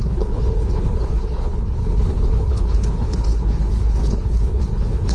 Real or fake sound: fake